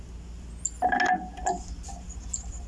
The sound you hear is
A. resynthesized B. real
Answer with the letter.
B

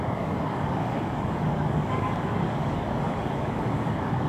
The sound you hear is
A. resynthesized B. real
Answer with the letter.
A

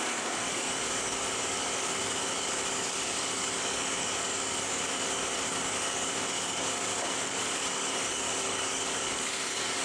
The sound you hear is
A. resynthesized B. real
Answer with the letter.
A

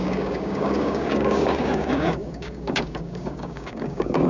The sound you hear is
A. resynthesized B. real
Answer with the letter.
A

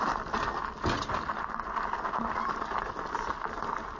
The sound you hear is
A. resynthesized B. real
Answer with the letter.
B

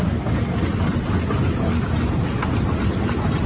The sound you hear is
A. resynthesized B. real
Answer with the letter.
B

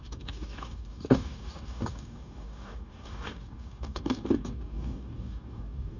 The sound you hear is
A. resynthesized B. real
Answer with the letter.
A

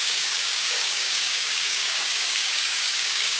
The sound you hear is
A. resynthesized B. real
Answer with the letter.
A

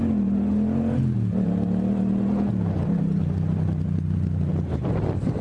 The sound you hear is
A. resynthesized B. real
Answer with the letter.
B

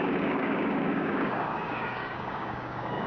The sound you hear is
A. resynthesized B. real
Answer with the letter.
A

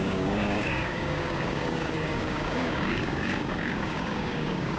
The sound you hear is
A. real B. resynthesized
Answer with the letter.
B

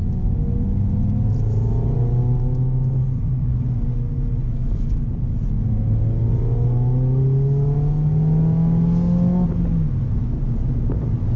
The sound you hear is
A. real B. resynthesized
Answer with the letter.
A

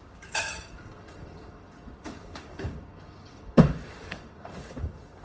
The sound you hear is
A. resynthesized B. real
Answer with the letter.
A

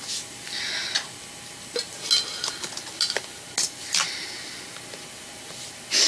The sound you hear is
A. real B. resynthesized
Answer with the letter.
A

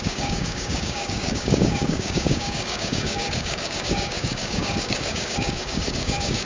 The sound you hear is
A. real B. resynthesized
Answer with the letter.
B